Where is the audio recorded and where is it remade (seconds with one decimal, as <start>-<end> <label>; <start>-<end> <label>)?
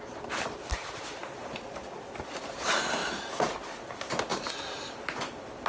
0.0-5.7 recorded